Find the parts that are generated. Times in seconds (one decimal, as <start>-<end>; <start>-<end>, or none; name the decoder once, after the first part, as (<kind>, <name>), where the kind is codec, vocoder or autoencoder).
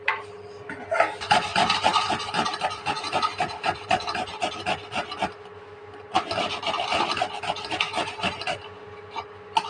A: none